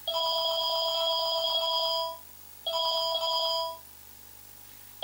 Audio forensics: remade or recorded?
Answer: recorded